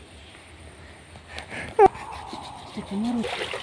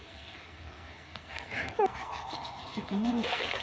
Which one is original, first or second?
first